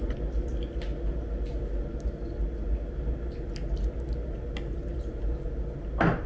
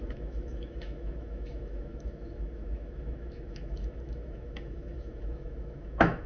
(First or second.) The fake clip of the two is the second